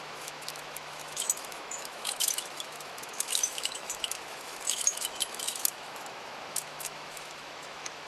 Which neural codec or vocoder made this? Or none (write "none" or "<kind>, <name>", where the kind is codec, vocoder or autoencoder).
autoencoder, DAC-VAE